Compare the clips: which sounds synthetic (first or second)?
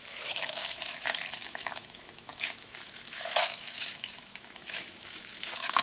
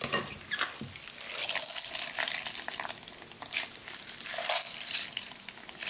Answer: first